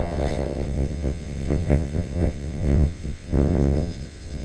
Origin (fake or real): fake